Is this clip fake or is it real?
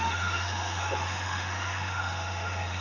fake